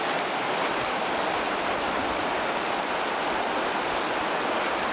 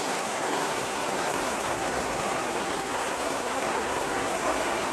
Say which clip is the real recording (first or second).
first